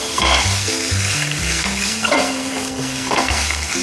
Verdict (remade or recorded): remade